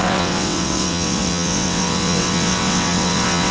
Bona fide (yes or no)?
no